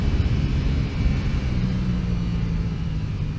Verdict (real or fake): fake